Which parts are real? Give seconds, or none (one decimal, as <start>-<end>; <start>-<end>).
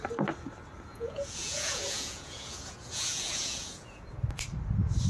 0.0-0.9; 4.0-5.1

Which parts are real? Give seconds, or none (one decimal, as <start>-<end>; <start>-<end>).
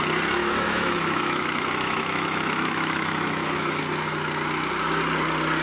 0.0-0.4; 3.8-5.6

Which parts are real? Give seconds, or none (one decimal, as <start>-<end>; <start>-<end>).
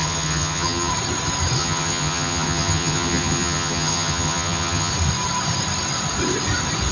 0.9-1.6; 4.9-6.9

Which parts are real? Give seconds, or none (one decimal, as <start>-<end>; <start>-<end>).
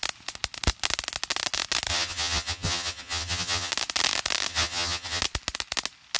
0.0-1.9; 3.7-4.5; 5.2-6.2